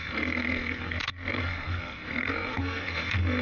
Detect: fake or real fake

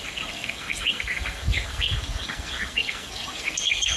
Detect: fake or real fake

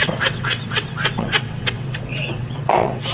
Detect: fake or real fake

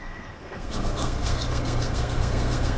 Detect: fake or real fake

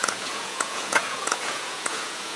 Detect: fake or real fake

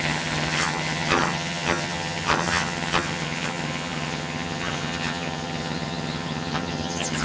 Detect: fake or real fake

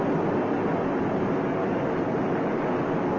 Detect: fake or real real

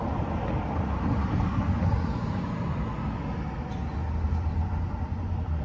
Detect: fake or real real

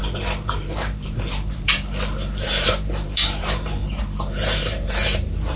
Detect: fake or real fake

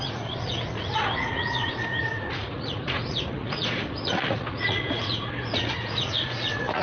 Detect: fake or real fake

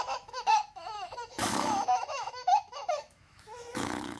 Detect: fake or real fake